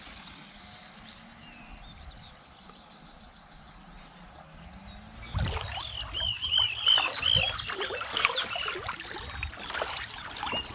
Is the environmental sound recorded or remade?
recorded